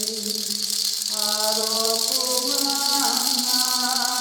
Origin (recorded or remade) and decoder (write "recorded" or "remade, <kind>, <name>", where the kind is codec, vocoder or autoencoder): remade, vocoder, BigVGAN v2